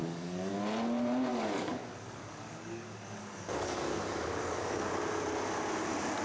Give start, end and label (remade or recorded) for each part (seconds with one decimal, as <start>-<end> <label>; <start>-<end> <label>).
0.0-0.5 remade; 0.5-1.3 recorded; 1.3-5.0 remade; 5.0-6.2 recorded